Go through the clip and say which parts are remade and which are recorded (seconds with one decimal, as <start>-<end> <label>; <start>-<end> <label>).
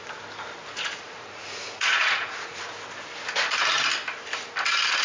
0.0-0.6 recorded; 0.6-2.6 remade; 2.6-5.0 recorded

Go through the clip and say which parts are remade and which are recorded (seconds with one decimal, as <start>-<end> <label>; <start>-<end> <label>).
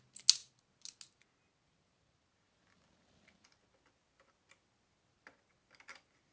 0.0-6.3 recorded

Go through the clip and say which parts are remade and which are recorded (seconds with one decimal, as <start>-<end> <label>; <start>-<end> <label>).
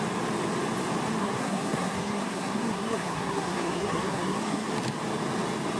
0.0-1.2 recorded; 1.2-4.7 remade; 4.7-5.8 recorded